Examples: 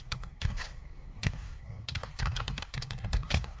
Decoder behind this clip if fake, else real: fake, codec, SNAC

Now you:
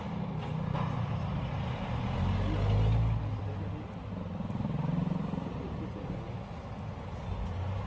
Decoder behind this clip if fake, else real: real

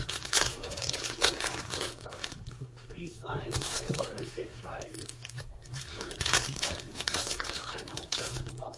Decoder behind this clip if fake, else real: fake, codec, SNAC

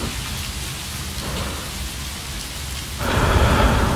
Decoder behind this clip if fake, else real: real